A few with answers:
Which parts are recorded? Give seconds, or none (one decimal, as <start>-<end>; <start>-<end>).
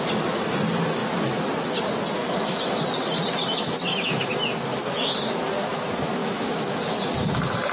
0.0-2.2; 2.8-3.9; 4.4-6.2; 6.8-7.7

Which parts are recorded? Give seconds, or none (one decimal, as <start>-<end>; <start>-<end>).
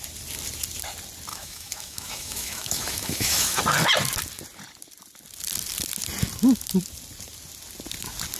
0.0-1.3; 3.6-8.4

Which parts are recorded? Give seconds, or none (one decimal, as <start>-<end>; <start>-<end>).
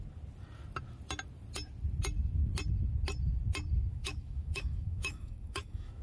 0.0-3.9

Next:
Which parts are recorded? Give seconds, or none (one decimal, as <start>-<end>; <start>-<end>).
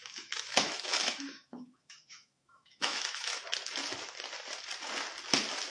3.4-5.7